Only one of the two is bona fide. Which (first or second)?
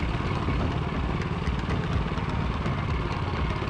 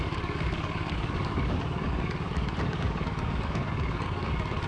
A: first